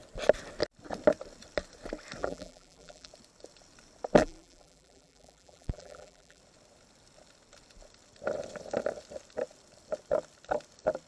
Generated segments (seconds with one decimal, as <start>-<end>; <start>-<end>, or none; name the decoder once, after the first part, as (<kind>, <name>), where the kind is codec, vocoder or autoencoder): 2.2-3.1 (vocoder, BigVGAN v2); 4.2-6.4